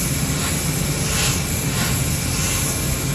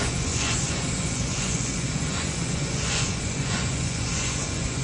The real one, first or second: first